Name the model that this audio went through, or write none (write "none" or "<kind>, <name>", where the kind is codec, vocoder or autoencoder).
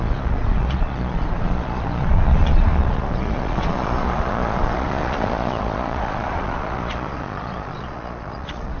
vocoder, Vocos